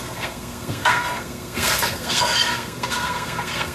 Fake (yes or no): yes